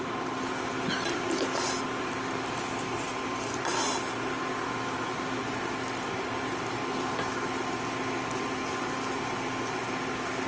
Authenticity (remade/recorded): recorded